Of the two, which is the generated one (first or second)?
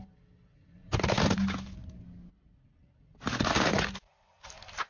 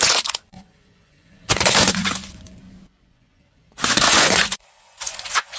second